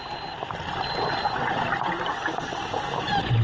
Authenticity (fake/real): real